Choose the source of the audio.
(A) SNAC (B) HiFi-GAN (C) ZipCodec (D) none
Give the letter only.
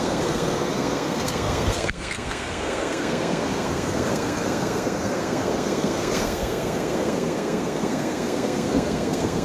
A